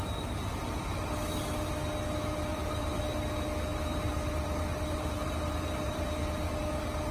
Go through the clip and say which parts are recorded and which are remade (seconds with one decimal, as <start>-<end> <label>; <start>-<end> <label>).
0.0-2.5 recorded; 2.5-3.0 remade; 3.0-3.7 recorded; 3.7-6.5 remade; 6.5-7.1 recorded